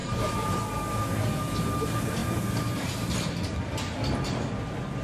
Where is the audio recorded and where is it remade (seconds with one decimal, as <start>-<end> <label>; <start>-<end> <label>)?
0.0-0.6 remade; 0.6-5.0 recorded